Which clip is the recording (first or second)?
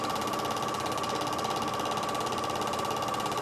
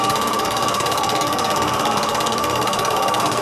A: first